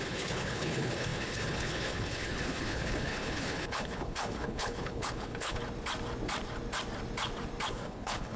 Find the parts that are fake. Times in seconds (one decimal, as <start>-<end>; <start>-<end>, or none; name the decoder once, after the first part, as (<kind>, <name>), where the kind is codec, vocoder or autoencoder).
0.0-5.6 (codec, HILCodec); 7.7-8.4